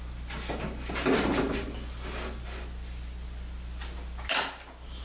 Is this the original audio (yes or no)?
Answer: yes